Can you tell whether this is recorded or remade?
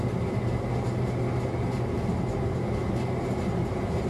recorded